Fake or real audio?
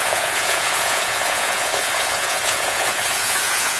fake